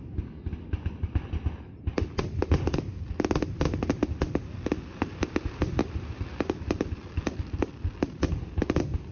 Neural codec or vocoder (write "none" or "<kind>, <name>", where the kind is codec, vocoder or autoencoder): none